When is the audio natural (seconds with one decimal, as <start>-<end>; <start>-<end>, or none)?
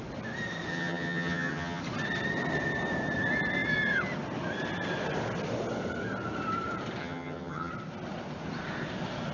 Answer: 0.0-0.7; 1.8-7.0; 7.7-9.3